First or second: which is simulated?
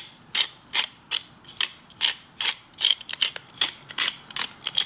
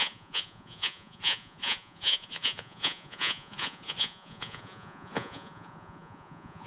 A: second